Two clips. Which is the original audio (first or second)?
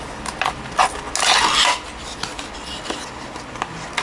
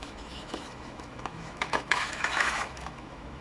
first